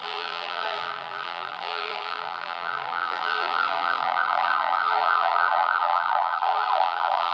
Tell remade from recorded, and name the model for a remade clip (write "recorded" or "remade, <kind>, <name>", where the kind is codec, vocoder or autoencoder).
remade, vocoder, BigVGAN v2